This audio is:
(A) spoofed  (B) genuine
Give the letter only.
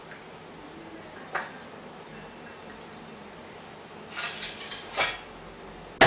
B